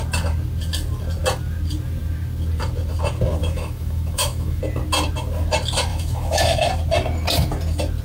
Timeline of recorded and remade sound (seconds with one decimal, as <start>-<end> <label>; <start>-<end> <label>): 0.0-3.4 recorded; 3.4-4.6 remade; 4.6-5.9 recorded; 5.9-6.7 remade; 6.7-8.0 recorded